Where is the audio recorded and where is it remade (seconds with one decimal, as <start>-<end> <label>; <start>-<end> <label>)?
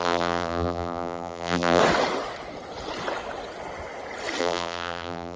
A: 0.0-1.8 remade; 1.8-4.4 recorded; 4.4-5.4 remade